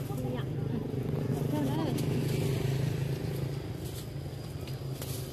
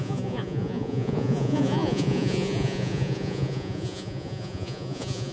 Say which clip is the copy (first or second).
second